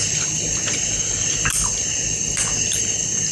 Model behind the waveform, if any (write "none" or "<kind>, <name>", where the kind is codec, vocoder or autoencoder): none